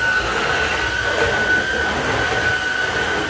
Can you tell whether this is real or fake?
real